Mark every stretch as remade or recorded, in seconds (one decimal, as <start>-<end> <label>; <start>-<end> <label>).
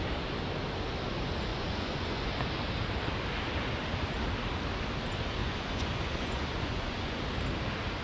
0.0-1.5 recorded; 1.5-2.3 remade; 2.3-5.4 recorded; 5.4-7.2 remade; 7.2-8.0 recorded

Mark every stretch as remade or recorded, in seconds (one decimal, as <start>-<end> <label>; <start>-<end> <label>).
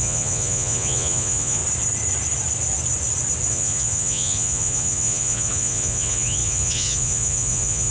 0.0-1.6 remade; 1.6-3.5 recorded; 3.5-7.9 remade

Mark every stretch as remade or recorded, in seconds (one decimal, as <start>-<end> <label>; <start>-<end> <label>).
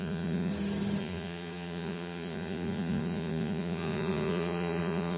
0.0-0.5 remade; 0.5-1.0 recorded; 1.0-5.2 remade